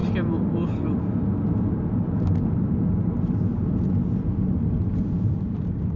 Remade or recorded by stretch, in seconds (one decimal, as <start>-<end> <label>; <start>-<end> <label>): 0.0-6.0 recorded